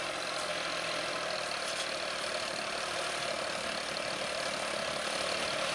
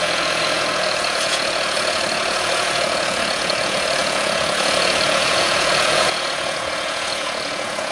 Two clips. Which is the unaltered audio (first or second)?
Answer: first